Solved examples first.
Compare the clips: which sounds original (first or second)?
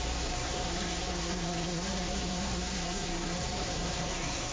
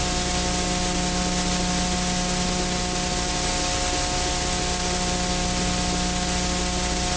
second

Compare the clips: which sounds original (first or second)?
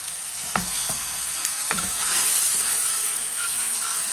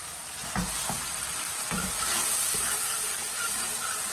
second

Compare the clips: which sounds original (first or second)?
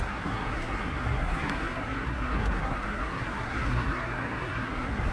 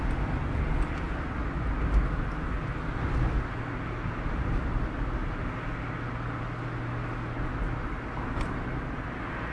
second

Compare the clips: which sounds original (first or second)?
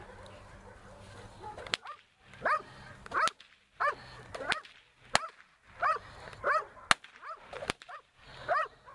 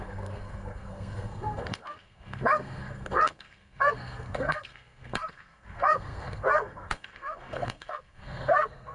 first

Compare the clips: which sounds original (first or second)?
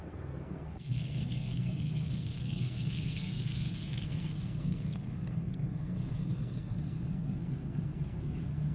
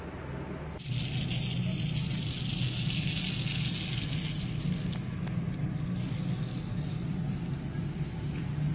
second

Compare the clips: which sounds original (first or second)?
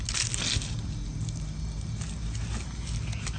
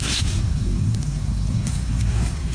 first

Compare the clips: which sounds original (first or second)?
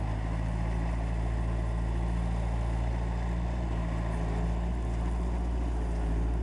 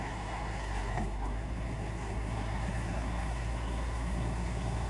first